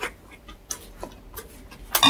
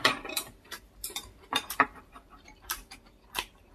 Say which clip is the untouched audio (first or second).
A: first